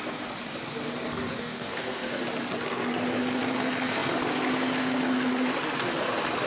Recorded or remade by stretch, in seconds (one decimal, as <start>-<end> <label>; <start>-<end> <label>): 0.0-1.3 recorded; 1.3-2.2 remade; 2.2-6.5 recorded